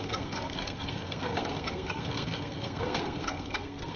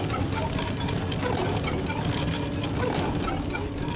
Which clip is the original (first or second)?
second